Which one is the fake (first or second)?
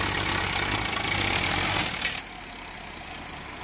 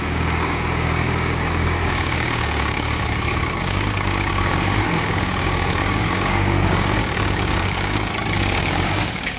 second